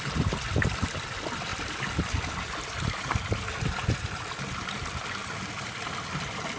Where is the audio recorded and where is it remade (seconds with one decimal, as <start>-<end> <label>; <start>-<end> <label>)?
0.0-6.6 recorded